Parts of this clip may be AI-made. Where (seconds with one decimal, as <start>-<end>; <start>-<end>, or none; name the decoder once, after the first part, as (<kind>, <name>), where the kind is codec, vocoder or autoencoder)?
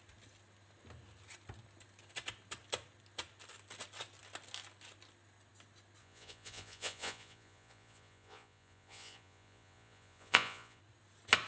6.0-10.8 (vocoder, Vocos)